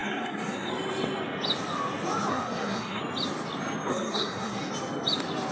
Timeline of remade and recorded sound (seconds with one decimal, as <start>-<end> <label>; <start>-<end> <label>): 0.0-0.7 remade; 0.7-2.3 recorded; 2.3-3.0 remade; 3.0-3.9 recorded; 3.9-4.7 remade; 4.7-5.5 recorded